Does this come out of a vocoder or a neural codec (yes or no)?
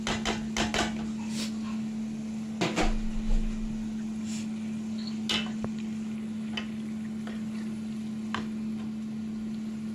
no